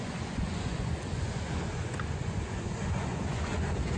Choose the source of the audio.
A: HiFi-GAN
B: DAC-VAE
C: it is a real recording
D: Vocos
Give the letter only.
D